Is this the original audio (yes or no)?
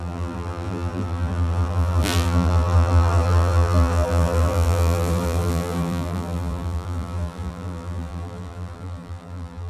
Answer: no